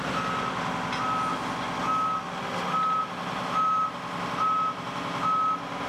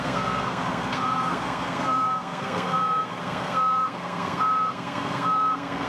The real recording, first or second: first